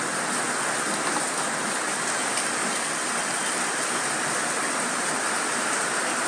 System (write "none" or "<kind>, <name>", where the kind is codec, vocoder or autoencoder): none